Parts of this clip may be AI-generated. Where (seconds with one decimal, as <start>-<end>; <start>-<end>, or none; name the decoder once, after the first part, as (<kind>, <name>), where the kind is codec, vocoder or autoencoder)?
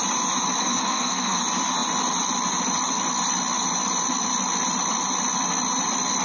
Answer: 0.6-1.4 (codec, SNAC)